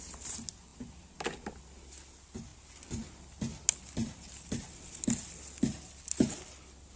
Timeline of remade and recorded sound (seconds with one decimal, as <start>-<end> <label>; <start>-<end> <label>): 0.0-7.0 recorded